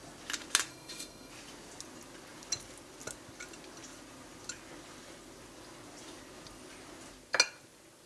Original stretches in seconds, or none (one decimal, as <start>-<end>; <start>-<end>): 0.0-0.7; 1.3-8.1